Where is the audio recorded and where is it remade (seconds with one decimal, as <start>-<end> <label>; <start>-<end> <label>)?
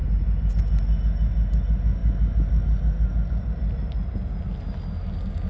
0.0-5.5 recorded